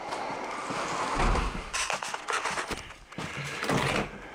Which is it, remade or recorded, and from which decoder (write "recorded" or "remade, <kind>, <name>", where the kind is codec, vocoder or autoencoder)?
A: recorded